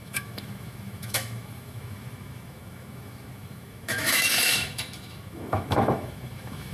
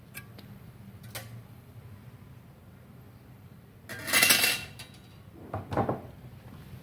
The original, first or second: second